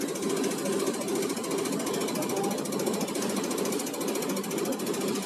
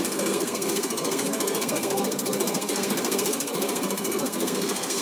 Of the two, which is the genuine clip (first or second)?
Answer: first